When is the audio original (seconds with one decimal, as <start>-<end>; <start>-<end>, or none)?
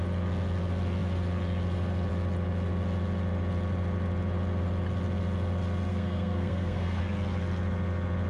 0.0-5.9; 7.0-8.3